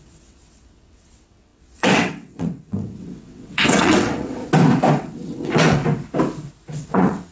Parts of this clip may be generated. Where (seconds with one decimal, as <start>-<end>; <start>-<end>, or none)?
0.0-4.4; 4.9-5.8; 6.8-7.3